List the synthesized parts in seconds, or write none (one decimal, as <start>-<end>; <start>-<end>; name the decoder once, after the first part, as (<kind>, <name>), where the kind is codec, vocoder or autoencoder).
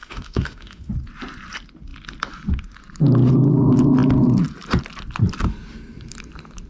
0.0-0.9 (autoencoder, DAC-VAE)